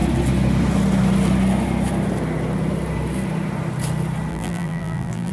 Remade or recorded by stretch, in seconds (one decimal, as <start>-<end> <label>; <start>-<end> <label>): 0.0-4.3 recorded; 4.3-5.3 remade